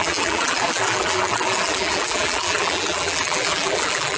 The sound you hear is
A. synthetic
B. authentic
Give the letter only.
A